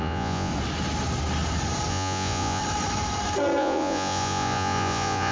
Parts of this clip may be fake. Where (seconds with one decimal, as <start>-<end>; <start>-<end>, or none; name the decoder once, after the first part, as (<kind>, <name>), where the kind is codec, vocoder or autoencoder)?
0.0-0.5 (vocoder, Vocos); 1.9-2.6; 3.6-5.3